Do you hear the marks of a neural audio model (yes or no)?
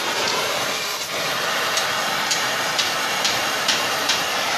yes